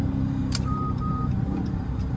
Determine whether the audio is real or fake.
fake